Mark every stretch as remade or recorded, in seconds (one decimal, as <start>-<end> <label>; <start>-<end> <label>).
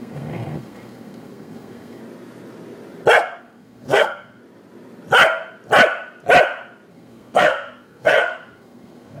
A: 0.0-2.0 remade; 2.0-3.4 recorded; 3.4-4.4 remade; 4.4-6.9 recorded; 6.9-9.2 remade